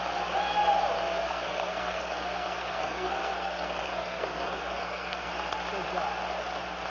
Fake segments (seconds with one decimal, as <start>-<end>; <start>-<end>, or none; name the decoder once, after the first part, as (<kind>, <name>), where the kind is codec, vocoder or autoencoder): 1.2-5.3 (codec, SNAC)